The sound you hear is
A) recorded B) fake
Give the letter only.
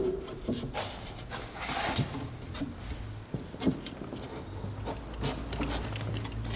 A